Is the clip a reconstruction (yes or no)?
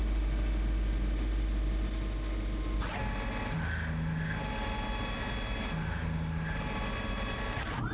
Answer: no